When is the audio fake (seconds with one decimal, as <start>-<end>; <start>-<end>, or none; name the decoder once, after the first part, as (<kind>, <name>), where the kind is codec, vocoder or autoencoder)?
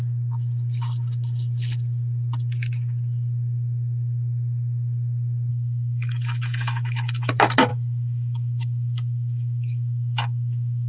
5.5-7.3 (autoencoder, DAC-VAE); 7.7-10.9